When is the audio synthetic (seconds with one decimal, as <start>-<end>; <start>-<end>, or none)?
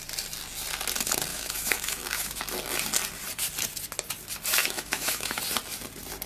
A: 1.3-2.4; 4.6-5.4